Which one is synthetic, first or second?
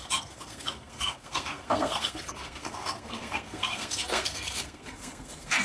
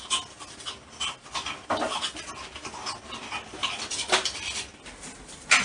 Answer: first